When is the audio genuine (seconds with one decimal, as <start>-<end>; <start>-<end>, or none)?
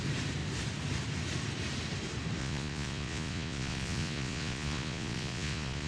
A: 0.0-2.4